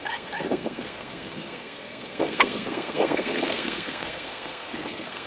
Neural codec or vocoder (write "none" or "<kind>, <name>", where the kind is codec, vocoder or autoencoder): codec, SNAC